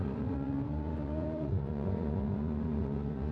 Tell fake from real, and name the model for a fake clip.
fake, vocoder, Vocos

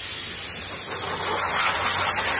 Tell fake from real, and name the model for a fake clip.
real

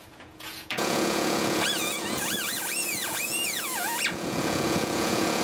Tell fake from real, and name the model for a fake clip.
fake, vocoder, Vocos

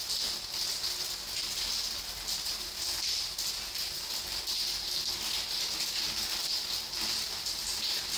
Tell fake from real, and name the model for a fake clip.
real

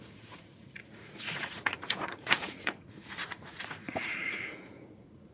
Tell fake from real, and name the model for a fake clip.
fake, vocoder, Vocos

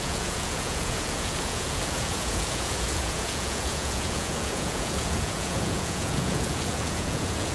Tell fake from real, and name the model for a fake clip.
fake, vocoder, Vocos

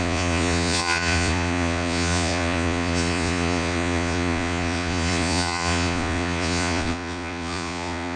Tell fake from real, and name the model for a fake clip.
fake, vocoder, Vocos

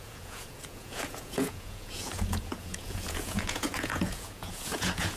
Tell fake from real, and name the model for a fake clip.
fake, vocoder, Vocos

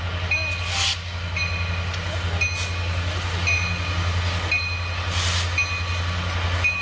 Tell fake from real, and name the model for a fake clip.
real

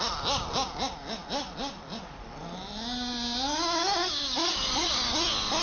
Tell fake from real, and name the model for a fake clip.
real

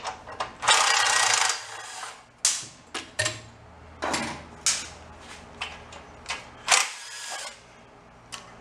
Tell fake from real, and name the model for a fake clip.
real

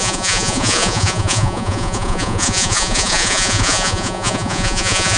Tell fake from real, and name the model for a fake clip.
fake, vocoder, Vocos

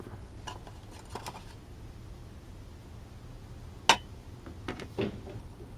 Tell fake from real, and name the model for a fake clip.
real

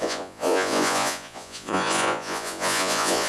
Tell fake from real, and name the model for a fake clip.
fake, vocoder, Vocos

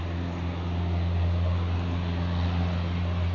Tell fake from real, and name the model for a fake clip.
real